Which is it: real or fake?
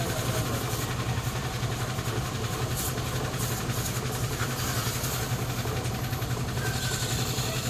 real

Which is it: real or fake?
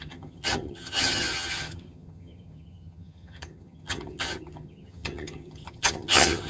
fake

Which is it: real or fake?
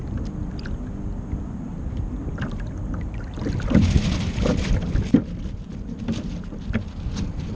fake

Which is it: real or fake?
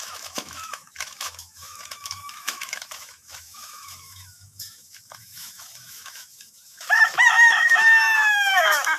fake